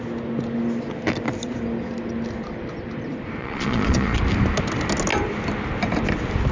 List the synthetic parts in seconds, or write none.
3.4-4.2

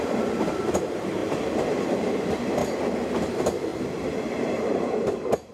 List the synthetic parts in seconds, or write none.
0.0-2.6; 3.3-5.5

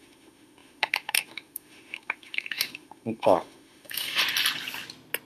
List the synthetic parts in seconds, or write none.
0.0-4.2

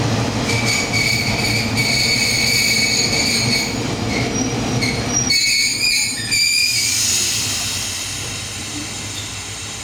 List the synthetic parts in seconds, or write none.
none